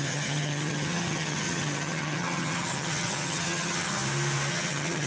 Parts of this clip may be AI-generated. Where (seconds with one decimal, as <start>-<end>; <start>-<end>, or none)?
0.0-4.0; 4.5-5.1

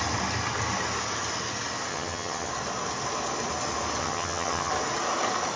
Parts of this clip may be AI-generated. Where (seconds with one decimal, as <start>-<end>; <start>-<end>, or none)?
1.9-2.5; 4.0-4.7